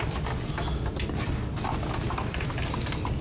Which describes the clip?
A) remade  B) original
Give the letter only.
B